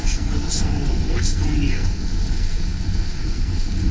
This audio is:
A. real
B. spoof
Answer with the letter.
B